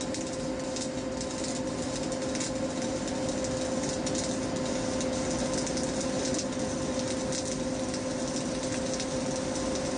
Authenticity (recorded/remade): recorded